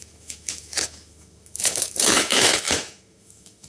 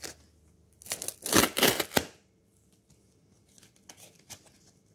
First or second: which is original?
second